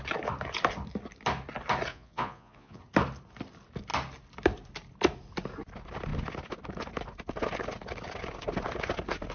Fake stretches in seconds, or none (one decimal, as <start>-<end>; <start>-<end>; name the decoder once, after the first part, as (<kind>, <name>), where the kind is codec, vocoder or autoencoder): 1.9-2.8 (vocoder, Vocos)